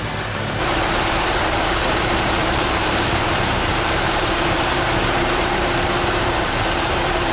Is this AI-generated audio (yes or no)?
yes